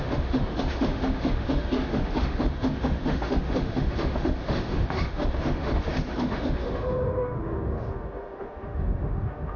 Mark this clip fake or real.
fake